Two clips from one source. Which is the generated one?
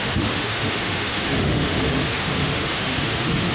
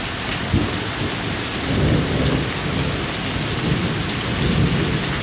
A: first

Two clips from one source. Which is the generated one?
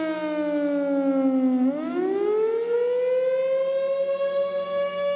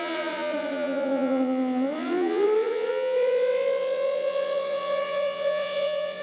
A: second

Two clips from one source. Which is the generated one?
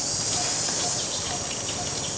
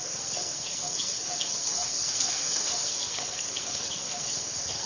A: second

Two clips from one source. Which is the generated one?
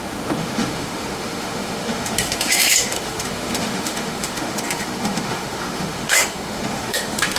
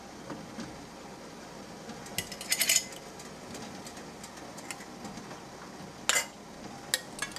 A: first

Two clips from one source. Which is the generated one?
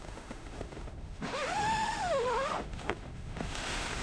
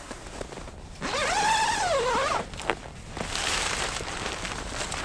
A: first